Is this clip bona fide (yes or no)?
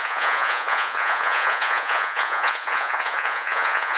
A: no